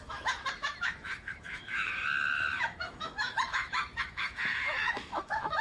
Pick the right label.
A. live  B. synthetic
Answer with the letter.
B